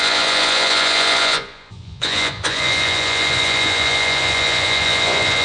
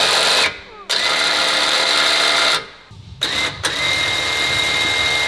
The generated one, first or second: first